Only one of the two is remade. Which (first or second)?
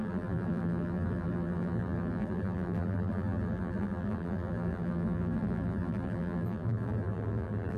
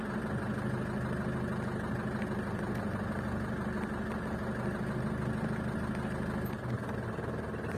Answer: first